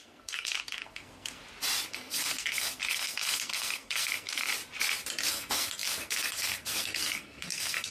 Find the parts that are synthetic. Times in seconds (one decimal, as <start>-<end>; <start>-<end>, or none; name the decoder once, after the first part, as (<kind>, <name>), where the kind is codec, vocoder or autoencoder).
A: 0.0-1.4 (codec, SNAC); 1.9-4.5; 5.3-7.9